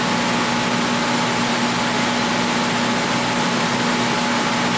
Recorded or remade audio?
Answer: recorded